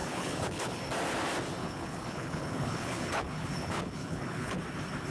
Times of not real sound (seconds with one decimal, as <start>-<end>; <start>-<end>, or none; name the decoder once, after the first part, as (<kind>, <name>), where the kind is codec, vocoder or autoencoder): 0.0-0.8 (codec, HILCodec); 1.6-4.6